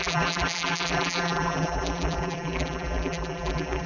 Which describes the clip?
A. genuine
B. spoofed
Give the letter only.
B